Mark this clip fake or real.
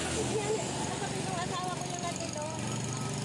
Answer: real